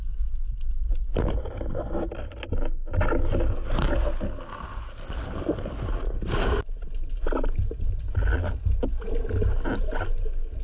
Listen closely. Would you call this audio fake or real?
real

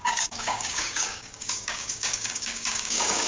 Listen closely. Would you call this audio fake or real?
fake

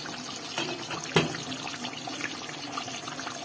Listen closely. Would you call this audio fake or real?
real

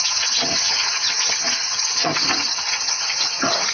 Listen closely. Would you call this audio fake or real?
fake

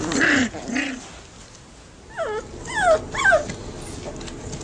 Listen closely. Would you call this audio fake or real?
real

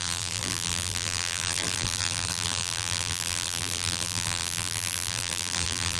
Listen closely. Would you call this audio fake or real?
fake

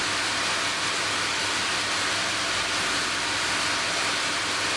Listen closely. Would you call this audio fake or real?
real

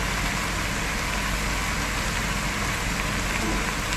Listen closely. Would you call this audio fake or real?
real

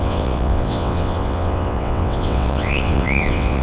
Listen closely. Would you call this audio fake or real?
fake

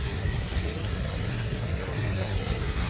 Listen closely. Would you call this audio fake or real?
fake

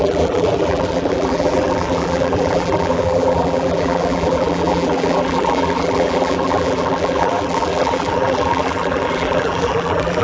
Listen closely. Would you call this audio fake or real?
fake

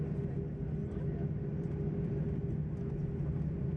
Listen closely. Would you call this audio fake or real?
real